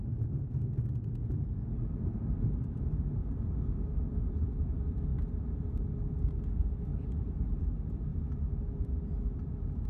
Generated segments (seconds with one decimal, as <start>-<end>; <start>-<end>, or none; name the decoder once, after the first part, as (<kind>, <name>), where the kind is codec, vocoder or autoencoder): 6.9-7.6 (vocoder, BigVGAN v2)